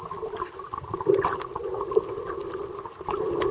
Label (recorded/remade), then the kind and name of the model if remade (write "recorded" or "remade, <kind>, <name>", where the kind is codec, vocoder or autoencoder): recorded